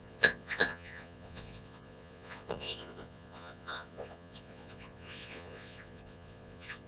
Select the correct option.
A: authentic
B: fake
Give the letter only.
B